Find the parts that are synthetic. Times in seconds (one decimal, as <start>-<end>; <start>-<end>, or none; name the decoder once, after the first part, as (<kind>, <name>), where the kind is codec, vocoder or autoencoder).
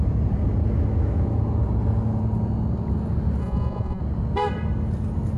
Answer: 3.4-4.0 (vocoder, Vocos)